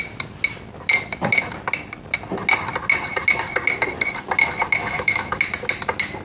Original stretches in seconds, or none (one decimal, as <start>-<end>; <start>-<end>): 0.0-4.8; 5.4-6.2